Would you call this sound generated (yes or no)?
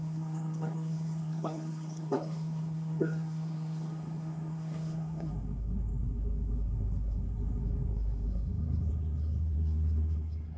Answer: yes